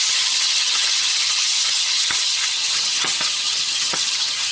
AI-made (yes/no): yes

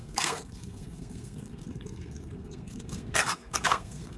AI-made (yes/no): yes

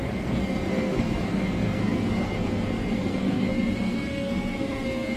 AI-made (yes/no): yes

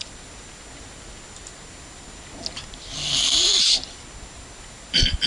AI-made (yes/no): no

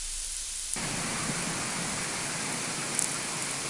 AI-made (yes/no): no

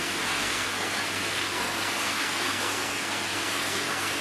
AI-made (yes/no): yes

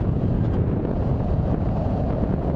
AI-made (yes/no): yes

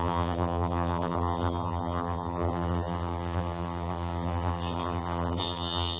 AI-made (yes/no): yes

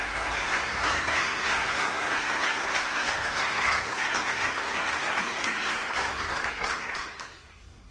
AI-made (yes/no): yes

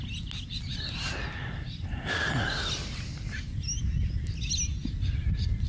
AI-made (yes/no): no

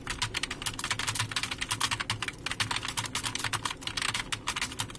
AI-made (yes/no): no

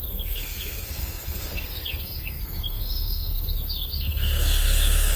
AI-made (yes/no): yes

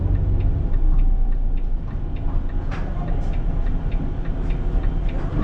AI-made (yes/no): no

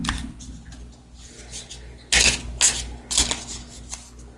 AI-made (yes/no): no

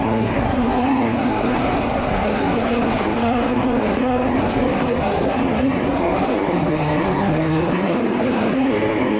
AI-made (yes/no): yes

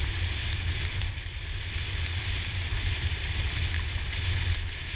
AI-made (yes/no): no